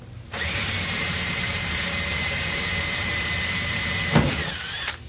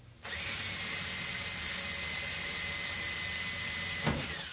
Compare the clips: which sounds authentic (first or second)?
second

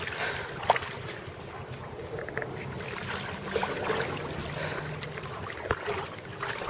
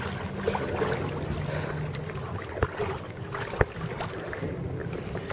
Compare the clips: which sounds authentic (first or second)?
second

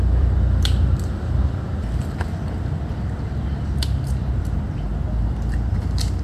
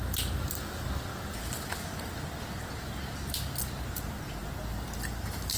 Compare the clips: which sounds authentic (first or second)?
second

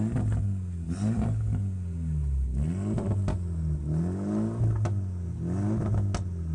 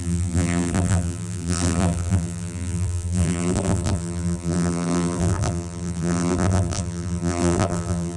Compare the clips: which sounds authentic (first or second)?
first